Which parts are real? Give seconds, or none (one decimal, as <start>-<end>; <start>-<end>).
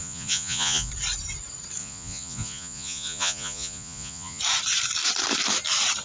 0.9-1.8; 4.4-6.0